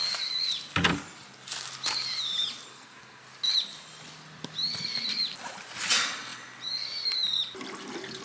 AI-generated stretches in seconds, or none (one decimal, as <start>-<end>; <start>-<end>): 2.7-3.2